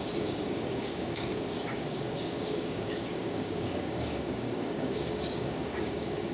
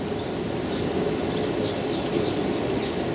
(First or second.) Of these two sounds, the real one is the second